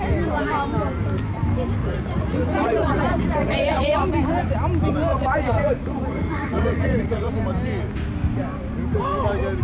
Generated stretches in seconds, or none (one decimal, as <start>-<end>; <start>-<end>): 1.8-4.1; 5.1-7.3